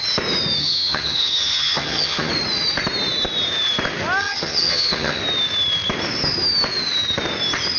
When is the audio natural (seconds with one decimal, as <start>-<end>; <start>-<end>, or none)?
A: 0.0-0.6; 2.3-4.2; 5.2-7.8